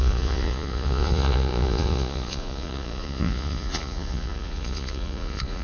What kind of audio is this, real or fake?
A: fake